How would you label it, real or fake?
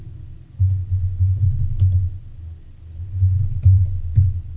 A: real